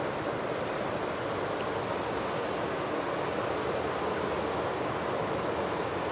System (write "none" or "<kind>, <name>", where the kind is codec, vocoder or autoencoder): none